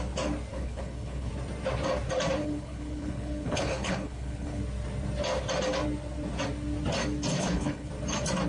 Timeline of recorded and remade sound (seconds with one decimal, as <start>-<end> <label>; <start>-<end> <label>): 0.0-0.5 recorded; 0.5-1.3 remade; 1.3-2.4 recorded; 2.4-4.6 remade; 4.6-7.3 recorded; 7.3-7.9 remade; 7.9-8.5 recorded